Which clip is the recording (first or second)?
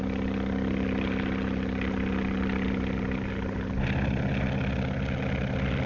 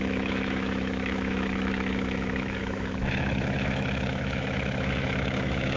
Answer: first